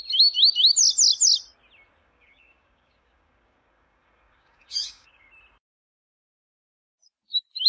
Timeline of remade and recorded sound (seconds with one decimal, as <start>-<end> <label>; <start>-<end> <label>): 0.0-2.0 recorded; 2.0-5.3 remade; 5.3-7.7 recorded